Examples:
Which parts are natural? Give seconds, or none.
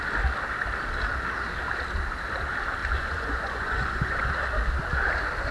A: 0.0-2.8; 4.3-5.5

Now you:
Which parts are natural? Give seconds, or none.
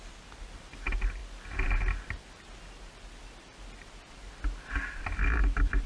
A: 0.0-5.9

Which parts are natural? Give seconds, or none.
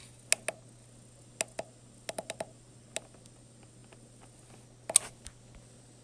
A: 0.0-6.0